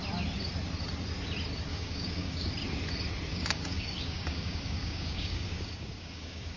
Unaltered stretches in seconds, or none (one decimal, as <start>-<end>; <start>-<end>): 0.0-1.7; 2.5-3.3